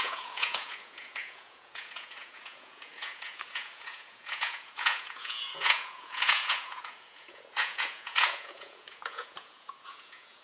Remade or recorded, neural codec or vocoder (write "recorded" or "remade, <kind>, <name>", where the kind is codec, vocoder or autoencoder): remade, vocoder, Vocos